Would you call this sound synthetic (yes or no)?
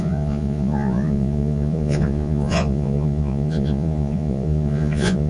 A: yes